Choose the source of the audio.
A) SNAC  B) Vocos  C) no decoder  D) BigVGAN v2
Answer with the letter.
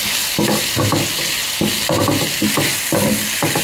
C